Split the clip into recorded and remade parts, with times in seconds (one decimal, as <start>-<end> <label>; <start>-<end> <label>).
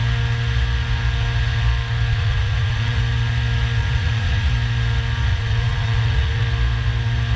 0.0-2.1 recorded; 2.1-3.0 remade; 3.0-3.8 recorded; 3.8-4.5 remade; 4.5-5.3 recorded; 5.3-6.4 remade; 6.4-7.4 recorded